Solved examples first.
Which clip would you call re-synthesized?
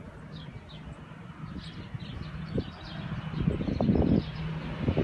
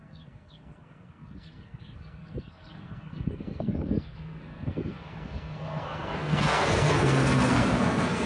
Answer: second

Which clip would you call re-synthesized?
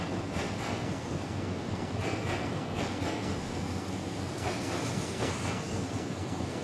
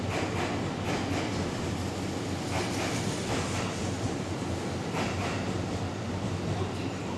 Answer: first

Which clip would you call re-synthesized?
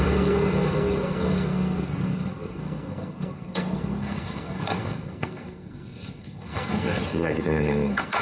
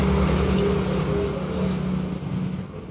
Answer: first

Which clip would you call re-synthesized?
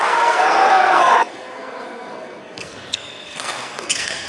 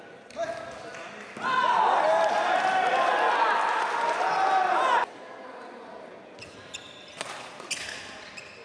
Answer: first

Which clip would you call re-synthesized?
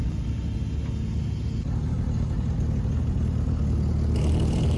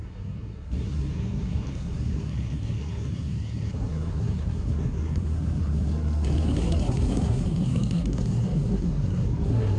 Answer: second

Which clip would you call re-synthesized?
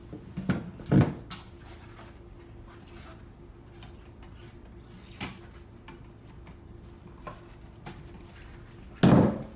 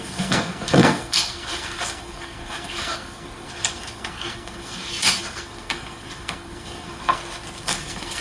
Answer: second